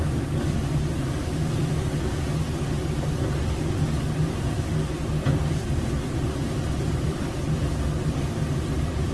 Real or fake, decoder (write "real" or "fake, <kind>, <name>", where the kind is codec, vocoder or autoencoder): fake, vocoder, BigVGAN v2